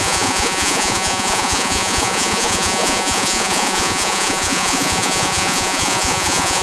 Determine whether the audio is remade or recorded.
remade